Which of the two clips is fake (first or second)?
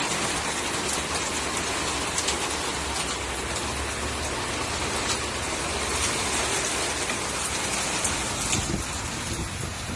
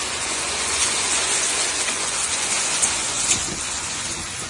second